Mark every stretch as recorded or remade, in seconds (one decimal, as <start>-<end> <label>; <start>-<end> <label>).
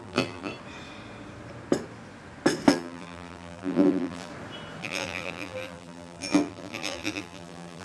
0.0-0.5 remade; 0.5-2.7 recorded; 2.7-4.3 remade; 4.3-4.8 recorded; 4.8-7.8 remade